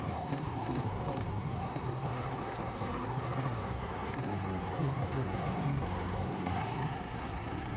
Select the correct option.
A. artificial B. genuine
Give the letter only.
A